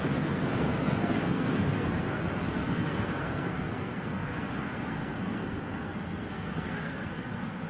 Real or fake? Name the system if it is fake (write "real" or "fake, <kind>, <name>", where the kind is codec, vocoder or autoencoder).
fake, codec, SNAC